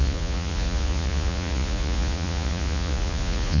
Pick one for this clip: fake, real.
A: fake